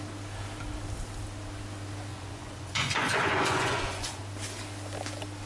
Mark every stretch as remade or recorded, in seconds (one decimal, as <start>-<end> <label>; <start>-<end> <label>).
0.0-2.1 recorded; 2.1-4.2 remade; 4.2-5.5 recorded